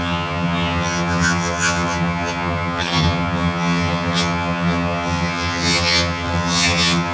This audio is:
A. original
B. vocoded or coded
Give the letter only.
B